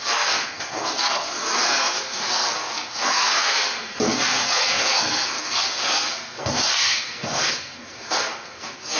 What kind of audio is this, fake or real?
fake